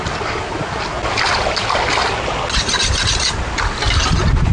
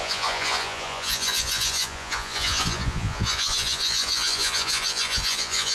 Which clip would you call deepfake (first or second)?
second